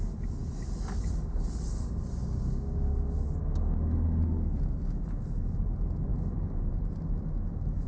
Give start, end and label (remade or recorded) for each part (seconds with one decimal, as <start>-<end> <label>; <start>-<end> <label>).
0.0-7.9 recorded